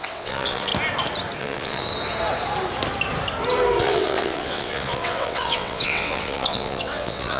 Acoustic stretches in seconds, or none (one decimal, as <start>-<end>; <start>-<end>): 0.7-1.4; 1.9-3.8

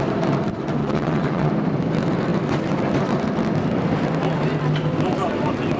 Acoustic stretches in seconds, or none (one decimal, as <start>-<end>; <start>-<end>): 0.0-0.8; 1.5-5.8

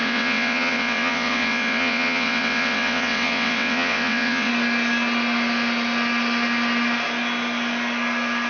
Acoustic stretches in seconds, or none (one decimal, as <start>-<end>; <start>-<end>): 4.5-8.5

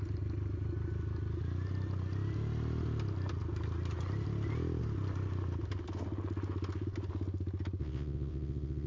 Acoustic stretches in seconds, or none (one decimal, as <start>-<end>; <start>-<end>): 0.0-7.8

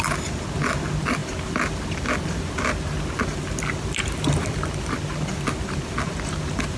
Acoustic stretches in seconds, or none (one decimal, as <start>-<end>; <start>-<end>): 0.0-6.8

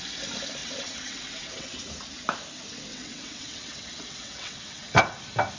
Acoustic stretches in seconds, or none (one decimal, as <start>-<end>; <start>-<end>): 0.0-0.6; 1.7-2.9; 5.0-5.6

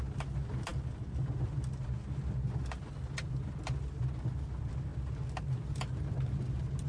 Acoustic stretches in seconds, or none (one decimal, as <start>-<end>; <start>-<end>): 0.0-6.9

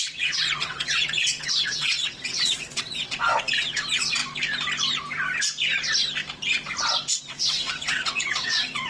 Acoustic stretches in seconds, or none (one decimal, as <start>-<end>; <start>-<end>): 4.2-7.2